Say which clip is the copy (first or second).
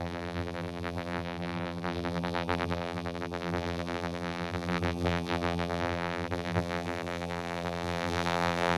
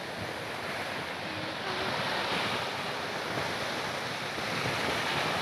first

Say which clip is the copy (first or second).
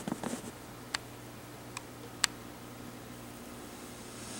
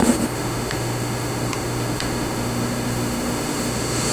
second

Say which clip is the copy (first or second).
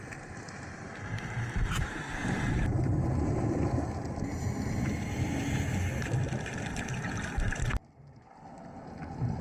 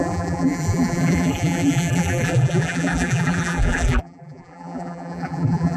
second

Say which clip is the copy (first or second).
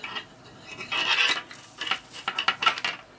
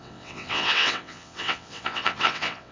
second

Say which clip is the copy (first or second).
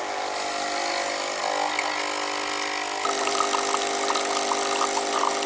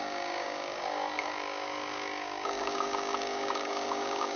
second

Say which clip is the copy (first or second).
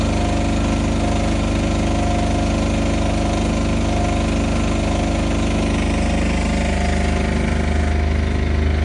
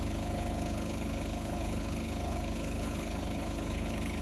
second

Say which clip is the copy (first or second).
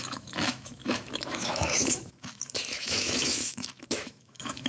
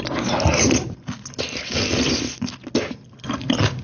first